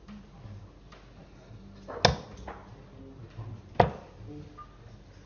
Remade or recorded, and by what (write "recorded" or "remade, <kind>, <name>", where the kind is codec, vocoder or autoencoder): recorded